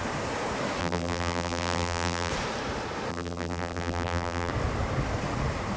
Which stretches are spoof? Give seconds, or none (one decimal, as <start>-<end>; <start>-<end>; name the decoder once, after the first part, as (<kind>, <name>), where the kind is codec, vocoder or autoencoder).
0.8-2.3 (vocoder, BigVGAN v2); 3.1-4.5